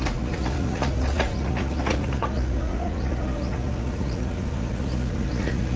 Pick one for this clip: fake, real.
fake